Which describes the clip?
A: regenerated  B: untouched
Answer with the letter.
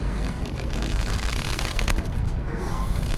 A